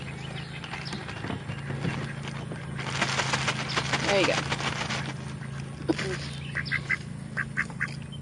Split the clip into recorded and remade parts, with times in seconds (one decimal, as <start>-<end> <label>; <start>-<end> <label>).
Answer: 0.0-8.2 recorded